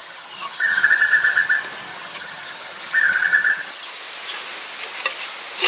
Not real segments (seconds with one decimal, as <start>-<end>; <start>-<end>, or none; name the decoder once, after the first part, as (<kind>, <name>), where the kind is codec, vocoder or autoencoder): 0.0-1.4 (vocoder, HiFi-GAN); 1.9-3.9